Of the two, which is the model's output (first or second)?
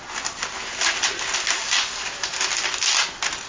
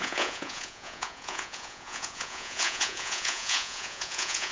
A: second